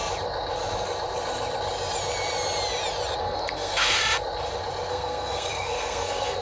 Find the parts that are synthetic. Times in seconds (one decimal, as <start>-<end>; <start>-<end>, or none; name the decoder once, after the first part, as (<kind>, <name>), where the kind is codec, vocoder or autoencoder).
3.2-4.0 (codec, SNAC); 4.9-6.4